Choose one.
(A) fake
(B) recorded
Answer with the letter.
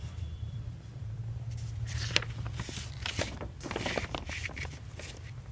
A